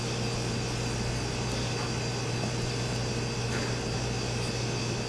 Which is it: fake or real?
real